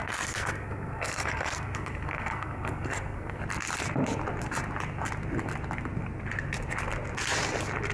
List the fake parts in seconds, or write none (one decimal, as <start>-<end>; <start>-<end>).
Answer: 0.0-3.4